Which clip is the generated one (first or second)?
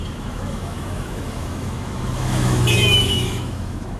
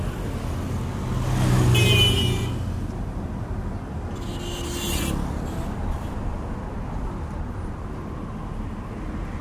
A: first